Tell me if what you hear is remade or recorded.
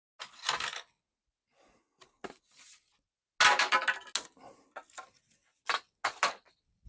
recorded